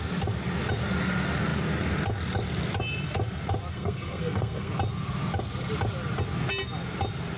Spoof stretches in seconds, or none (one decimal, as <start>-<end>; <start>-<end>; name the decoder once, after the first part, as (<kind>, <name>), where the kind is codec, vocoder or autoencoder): 3.7-4.7 (codec, SNAC)